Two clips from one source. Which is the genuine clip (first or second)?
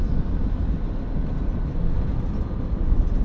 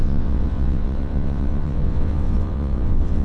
first